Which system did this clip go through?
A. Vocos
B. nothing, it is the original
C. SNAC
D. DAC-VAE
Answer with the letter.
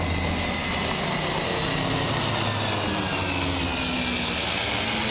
B